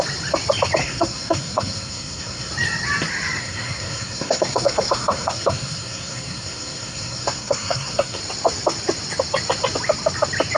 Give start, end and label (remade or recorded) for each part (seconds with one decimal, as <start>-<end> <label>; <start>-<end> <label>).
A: 0.0-0.8 recorded; 0.8-2.5 remade; 2.5-3.4 recorded; 3.4-8.2 remade; 8.2-10.6 recorded